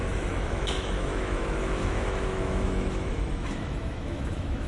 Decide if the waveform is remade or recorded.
remade